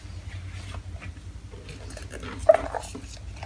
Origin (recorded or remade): recorded